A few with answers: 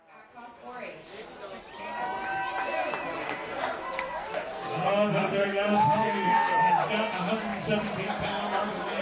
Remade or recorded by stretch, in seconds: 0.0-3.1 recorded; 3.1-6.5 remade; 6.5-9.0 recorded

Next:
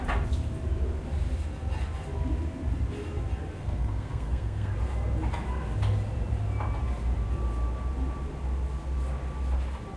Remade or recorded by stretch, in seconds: 0.0-3.6 recorded; 3.6-4.7 remade; 4.7-10.0 recorded

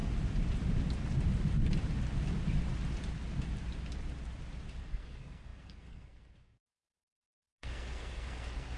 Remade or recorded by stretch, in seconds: 0.0-4.8 recorded; 4.8-8.8 remade

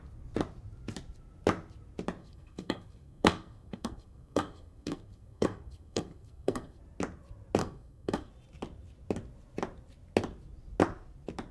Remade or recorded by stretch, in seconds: 0.0-2.2 recorded; 2.2-6.8 remade; 6.8-7.6 recorded; 7.6-8.3 remade; 8.3-11.5 recorded

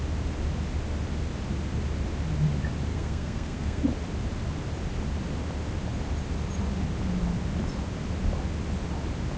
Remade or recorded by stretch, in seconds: 0.0-2.9 recorded; 2.9-3.8 remade; 3.8-9.4 recorded

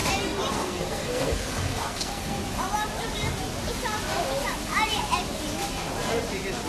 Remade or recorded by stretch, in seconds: 0.0-0.5 recorded; 0.5-2.4 remade; 2.4-6.7 recorded